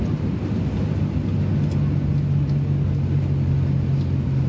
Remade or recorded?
recorded